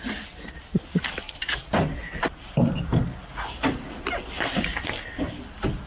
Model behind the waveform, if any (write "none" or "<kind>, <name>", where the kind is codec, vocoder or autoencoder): none